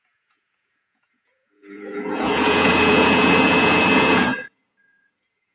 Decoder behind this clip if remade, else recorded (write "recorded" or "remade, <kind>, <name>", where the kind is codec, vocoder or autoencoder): remade, vocoder, Vocos